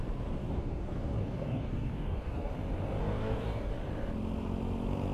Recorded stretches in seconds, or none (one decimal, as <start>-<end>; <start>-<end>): 0.0-0.4; 2.5-3.0; 3.7-5.1